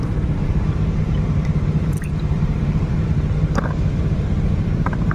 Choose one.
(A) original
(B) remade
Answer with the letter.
B